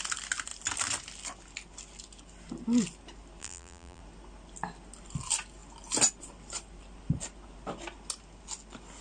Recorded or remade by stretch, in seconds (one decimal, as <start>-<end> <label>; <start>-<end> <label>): 0.0-3.4 recorded; 3.4-4.0 remade; 4.0-9.0 recorded